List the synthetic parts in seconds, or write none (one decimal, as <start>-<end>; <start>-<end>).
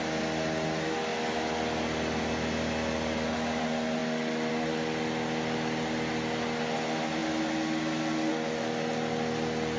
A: none